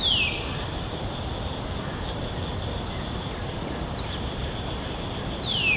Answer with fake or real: real